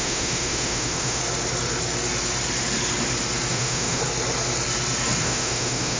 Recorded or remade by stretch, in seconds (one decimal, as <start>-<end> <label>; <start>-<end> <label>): 0.0-1.2 remade; 1.2-3.5 recorded; 3.5-4.0 remade; 4.0-5.2 recorded; 5.2-6.0 remade